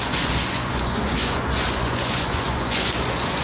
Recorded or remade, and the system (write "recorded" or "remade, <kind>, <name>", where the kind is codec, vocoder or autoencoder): remade, vocoder, Vocos